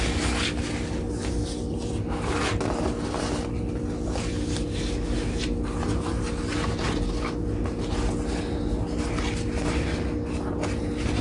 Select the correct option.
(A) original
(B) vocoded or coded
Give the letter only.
A